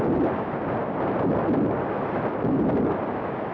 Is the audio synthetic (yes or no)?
no